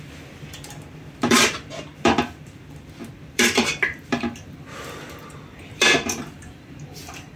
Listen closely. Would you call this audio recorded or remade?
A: remade